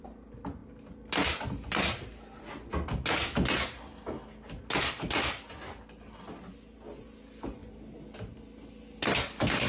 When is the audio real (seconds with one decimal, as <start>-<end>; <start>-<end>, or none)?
0.0-9.7